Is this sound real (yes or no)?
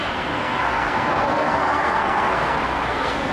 no